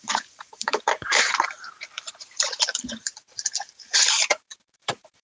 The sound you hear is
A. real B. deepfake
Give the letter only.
B